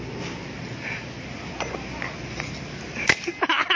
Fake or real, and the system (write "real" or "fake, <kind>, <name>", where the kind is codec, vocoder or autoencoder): real